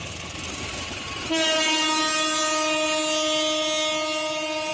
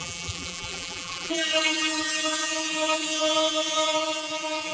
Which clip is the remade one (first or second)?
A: second